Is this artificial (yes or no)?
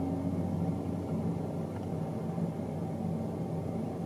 no